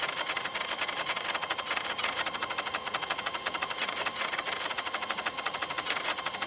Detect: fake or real fake